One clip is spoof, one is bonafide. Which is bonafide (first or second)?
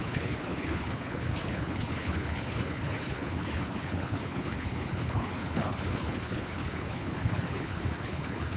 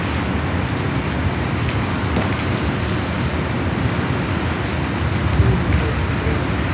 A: second